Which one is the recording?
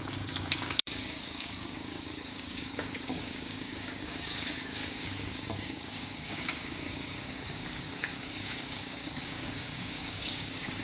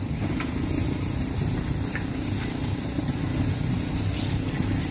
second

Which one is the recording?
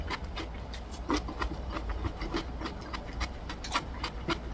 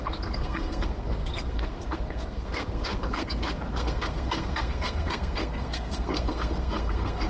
first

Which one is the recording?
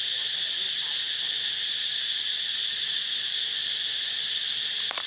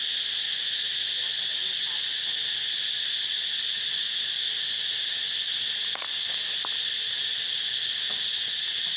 second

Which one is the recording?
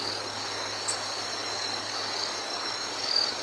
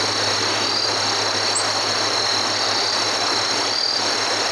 second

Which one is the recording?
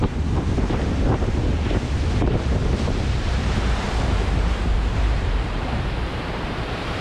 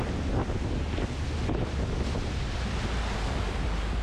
second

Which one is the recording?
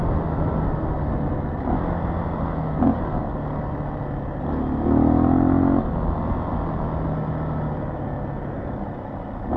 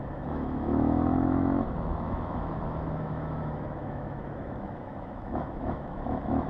first